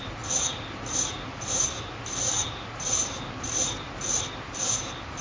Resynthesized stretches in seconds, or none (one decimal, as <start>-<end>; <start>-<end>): none